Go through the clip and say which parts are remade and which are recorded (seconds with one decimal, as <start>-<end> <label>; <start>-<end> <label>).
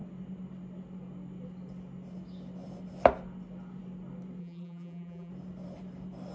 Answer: 0.0-4.4 recorded; 4.4-5.3 remade; 5.3-6.3 recorded